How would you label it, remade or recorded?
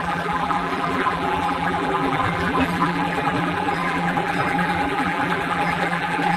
remade